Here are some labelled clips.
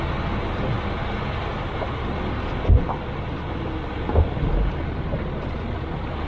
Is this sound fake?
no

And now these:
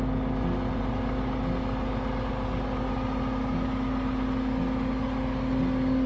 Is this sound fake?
no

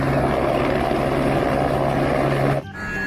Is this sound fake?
no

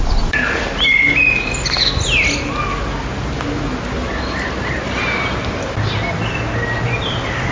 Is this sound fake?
no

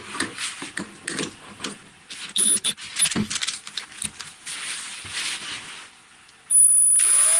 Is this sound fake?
no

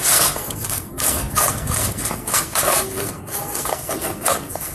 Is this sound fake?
yes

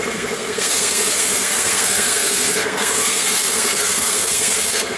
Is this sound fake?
yes